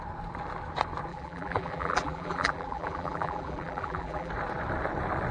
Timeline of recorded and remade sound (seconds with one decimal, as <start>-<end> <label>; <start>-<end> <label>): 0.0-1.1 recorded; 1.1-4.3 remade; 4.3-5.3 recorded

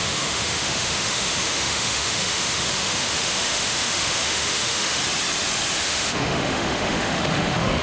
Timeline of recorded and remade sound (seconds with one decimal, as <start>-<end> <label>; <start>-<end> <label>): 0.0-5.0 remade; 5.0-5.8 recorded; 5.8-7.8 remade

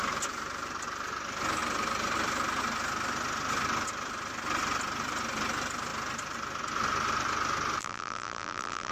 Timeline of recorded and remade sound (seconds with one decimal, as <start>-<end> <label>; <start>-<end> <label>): 0.0-7.8 recorded; 7.8-8.9 remade

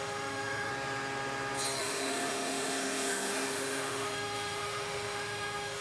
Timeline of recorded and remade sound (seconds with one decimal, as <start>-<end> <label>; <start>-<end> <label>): 0.0-0.7 remade; 0.7-1.8 recorded; 1.8-5.8 remade

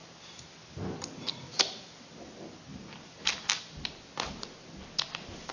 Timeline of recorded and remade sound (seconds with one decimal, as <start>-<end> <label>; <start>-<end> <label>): 0.0-5.5 recorded